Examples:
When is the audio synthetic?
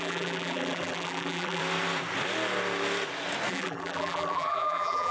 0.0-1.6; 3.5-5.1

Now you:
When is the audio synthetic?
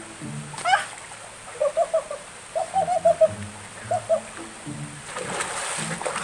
none